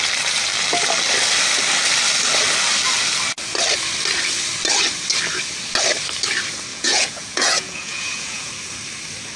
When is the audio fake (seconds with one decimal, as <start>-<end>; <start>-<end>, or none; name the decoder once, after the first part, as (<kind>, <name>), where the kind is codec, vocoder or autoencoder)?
6.7-8.5 (vocoder, Vocos)